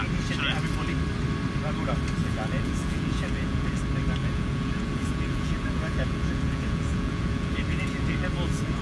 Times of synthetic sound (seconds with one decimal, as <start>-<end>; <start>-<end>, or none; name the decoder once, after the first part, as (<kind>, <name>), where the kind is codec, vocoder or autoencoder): 2.2-3.8 (vocoder, Vocos); 4.2-8.8